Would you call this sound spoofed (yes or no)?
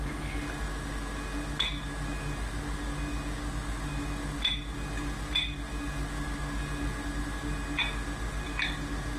no